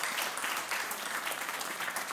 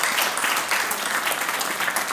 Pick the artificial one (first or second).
first